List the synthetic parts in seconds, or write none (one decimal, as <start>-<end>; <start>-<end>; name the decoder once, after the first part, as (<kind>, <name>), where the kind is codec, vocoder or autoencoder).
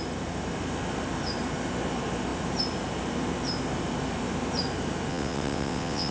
5.1-6.1 (vocoder, WaveNeXt)